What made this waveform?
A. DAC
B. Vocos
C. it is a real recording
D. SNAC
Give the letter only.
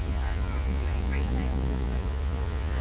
B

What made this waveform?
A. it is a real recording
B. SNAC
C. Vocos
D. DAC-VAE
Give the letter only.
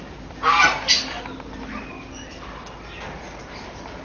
A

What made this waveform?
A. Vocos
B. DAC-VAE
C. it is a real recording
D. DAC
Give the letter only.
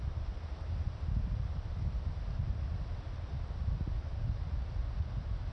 C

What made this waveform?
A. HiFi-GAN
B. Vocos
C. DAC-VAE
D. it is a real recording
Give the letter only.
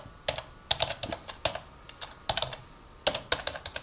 D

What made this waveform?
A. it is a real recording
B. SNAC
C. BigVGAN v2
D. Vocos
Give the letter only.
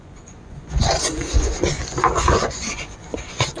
D